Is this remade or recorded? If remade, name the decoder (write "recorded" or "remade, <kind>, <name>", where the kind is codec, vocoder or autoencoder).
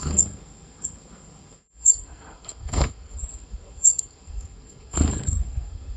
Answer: remade, codec, SNAC